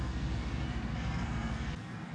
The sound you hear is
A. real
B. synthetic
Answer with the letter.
B